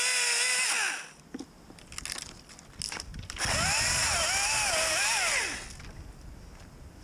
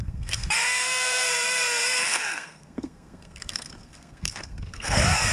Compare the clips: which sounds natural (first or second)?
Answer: first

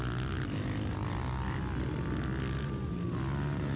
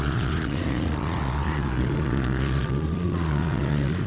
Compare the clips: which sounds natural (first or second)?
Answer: first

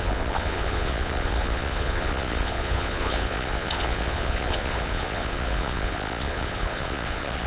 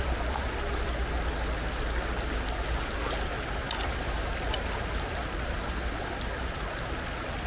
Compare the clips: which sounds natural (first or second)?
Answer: second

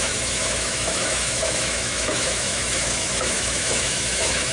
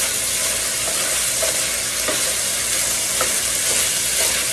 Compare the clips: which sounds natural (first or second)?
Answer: second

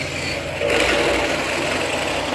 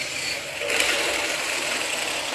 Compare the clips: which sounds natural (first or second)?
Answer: first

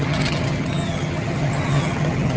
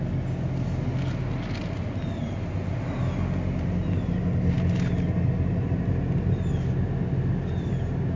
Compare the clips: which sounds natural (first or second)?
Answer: second